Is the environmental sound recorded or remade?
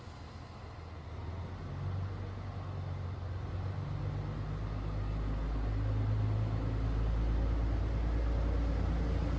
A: recorded